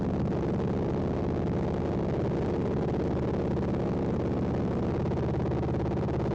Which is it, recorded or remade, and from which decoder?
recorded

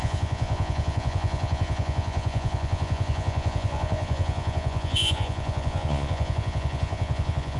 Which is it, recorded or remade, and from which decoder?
remade, vocoder, Vocos